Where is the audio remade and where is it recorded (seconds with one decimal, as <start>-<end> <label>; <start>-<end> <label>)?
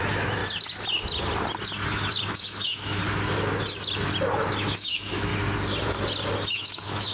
0.0-0.4 remade; 0.4-2.1 recorded; 2.1-3.0 remade; 3.0-4.6 recorded; 4.6-5.3 remade; 5.3-6.5 recorded; 6.5-7.1 remade